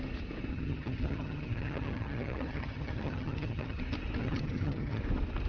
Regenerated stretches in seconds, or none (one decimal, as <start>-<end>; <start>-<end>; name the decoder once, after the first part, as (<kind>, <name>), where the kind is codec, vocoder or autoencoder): 0.5-3.8 (vocoder, HiFi-GAN); 4.2-5.0